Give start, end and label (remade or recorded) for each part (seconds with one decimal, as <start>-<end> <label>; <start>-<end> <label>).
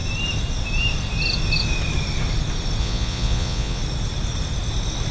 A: 0.0-2.8 recorded; 2.8-3.8 remade; 3.8-5.1 recorded